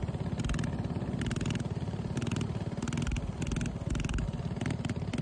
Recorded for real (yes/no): yes